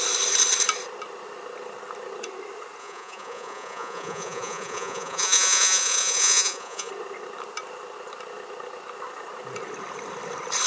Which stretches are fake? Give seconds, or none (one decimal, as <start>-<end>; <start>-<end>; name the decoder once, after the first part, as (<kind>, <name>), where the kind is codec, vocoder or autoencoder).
2.8-6.9 (vocoder, Vocos)

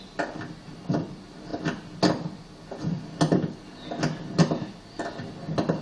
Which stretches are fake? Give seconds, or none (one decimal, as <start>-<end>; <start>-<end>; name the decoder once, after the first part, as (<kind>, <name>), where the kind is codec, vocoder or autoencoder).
none

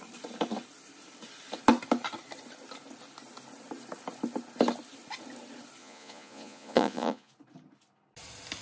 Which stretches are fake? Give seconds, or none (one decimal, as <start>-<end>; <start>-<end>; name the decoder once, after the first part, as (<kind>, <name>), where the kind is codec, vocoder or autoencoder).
5.8-7.3 (vocoder, Vocos)

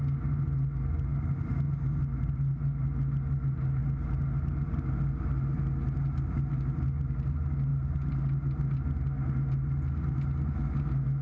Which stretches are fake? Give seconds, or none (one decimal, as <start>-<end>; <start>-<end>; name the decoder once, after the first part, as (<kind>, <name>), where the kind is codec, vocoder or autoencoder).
none

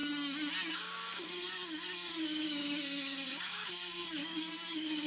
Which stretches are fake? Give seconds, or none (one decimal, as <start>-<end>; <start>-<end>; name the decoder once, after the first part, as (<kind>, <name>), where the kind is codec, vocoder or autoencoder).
0.7-5.1 (codec, DAC)

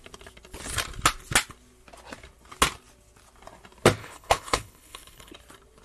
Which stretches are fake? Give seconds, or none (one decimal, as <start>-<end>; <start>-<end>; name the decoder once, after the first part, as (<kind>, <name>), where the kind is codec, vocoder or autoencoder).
4.0-5.3 (codec, HILCodec)